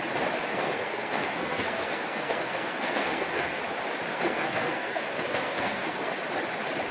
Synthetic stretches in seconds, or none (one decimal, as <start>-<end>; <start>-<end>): 0.5-3.6; 4.1-6.1